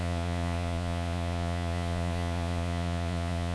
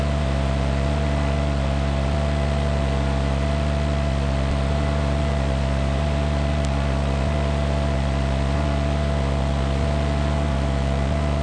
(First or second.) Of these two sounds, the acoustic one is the second